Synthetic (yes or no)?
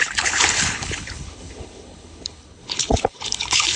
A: yes